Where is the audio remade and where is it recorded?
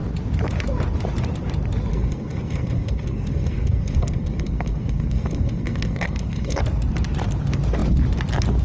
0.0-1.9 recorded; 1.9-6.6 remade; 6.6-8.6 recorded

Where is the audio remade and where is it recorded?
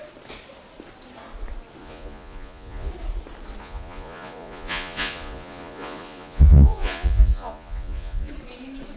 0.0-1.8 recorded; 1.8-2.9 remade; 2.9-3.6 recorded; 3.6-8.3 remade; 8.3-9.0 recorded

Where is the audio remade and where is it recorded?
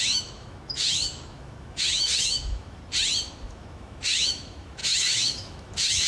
0.0-2.8 remade; 2.8-3.3 recorded; 3.3-6.1 remade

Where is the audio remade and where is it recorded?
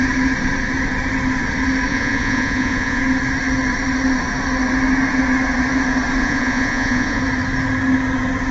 0.0-1.9 recorded; 1.9-3.0 remade; 3.0-6.2 recorded; 6.2-7.2 remade; 7.2-8.5 recorded